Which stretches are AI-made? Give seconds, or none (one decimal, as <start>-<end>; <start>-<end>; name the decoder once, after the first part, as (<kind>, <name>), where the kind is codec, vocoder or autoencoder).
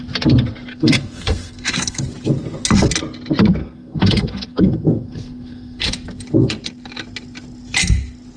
0.7-2.0 (codec, SNAC); 3.6-5.8